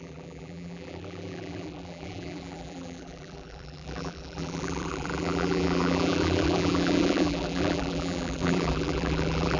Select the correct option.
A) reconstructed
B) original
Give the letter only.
A